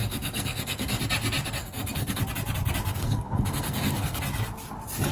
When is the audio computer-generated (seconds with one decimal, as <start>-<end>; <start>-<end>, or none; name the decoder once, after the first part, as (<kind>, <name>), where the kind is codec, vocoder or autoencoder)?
0.0-1.0 (codec, SNAC); 1.6-2.2; 2.9-4.2